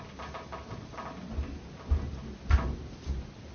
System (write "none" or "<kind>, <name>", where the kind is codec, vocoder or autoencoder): none